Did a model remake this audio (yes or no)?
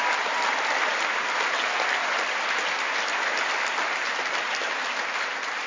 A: no